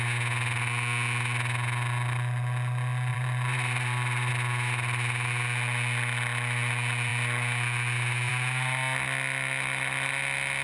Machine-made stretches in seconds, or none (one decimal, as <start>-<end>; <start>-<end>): 3.1-4.3